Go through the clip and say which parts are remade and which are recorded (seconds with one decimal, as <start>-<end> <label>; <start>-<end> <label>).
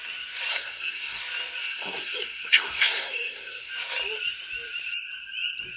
0.0-0.5 recorded; 0.5-1.2 remade; 1.2-1.6 recorded; 1.6-3.7 remade; 3.7-5.8 recorded